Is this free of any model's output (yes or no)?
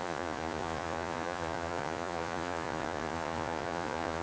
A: no